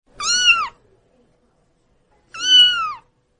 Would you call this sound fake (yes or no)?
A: no